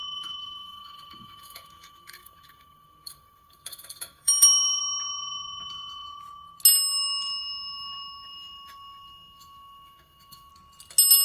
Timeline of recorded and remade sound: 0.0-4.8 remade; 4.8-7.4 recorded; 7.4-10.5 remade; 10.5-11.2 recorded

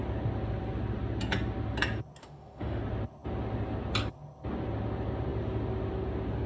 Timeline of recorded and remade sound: 0.0-2.2 recorded; 2.2-2.8 remade; 2.8-6.5 recorded

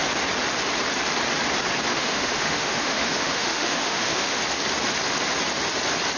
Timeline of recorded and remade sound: 0.0-1.9 recorded; 1.9-4.4 remade; 4.4-6.2 recorded